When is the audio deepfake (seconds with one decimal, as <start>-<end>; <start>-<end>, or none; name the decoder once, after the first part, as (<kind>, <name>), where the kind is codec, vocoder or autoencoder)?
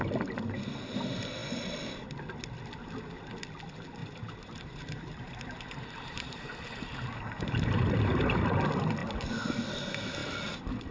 4.0-7.8 (vocoder, BigVGAN v2)